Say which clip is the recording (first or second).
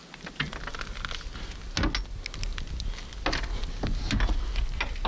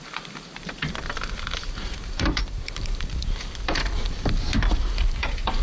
first